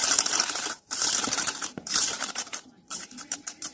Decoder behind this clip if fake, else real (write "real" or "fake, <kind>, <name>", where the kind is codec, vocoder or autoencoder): fake, vocoder, BigVGAN v2